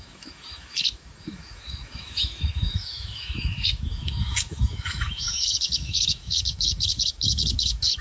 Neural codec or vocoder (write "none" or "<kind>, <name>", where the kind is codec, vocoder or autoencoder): autoencoder, DAC-VAE